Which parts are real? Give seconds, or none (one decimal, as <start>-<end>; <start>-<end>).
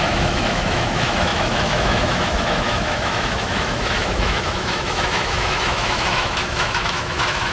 none